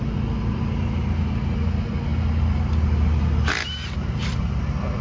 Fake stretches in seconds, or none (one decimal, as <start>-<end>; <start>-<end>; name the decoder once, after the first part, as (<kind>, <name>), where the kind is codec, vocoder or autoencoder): none